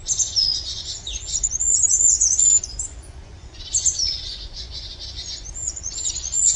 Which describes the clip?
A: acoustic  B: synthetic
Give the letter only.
B